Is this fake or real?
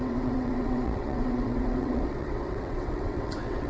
fake